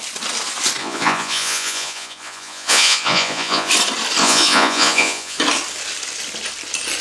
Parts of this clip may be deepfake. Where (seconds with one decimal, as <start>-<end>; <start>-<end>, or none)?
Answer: 0.8-3.7; 4.2-5.4